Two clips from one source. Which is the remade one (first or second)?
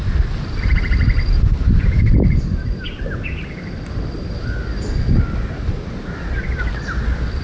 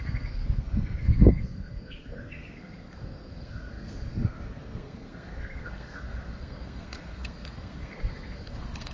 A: second